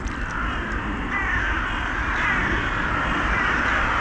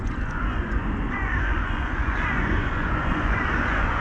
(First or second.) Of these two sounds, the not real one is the second